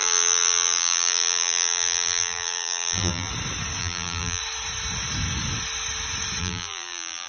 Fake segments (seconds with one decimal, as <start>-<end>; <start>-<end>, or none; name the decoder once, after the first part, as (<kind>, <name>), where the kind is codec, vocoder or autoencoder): 0.0-3.3 (vocoder, BigVGAN v2); 3.8-4.4; 6.4-7.3